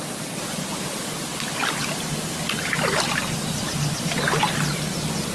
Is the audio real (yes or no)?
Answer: yes